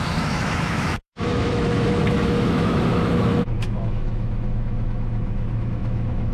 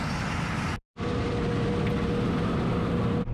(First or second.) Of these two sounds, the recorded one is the second